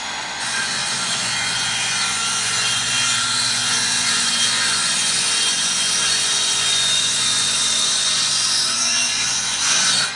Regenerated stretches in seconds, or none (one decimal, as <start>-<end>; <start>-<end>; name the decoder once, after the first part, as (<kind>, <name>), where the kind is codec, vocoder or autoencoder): 0.0-10.2 (vocoder, Vocos)